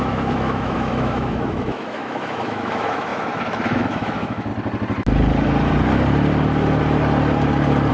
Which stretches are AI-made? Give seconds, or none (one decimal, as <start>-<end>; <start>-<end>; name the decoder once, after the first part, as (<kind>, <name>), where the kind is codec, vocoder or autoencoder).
0.0-4.5 (autoencoder, DAC-VAE)